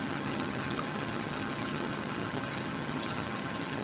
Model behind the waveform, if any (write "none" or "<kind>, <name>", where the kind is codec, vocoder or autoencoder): vocoder, HiFi-GAN